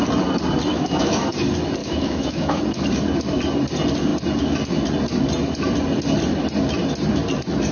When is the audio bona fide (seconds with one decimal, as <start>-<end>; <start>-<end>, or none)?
0.0-0.7; 1.3-1.8; 2.6-7.7